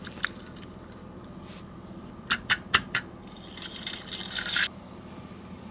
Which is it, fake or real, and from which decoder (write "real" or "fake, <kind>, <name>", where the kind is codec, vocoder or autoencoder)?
real